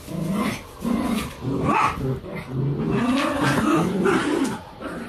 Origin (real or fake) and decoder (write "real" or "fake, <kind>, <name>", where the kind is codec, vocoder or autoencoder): real